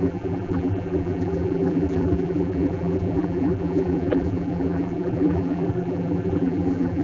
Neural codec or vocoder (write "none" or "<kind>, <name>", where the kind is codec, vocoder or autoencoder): vocoder, BigVGAN v2